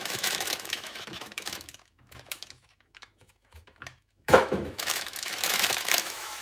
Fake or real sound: fake